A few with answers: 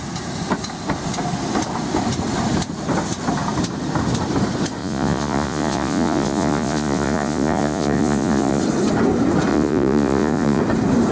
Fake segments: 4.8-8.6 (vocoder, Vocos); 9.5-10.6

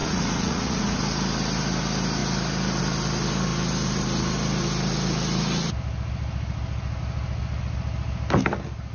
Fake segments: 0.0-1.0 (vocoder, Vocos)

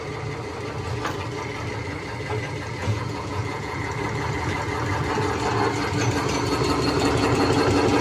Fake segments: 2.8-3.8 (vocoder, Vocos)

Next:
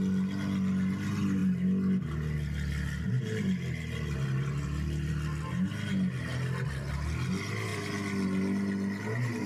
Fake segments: none

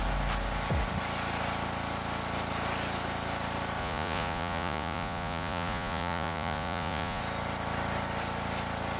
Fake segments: 3.8-7.2 (vocoder, Vocos)

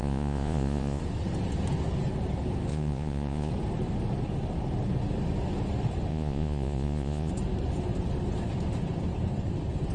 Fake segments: 0.0-1.0 (vocoder, Vocos); 2.7-3.5; 6.1-7.3

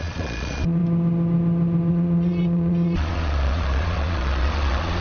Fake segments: 0.0-0.8 (vocoder, Vocos); 1.9-5.0

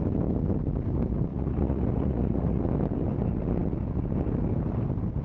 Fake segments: 1.3-2.6 (vocoder, Vocos)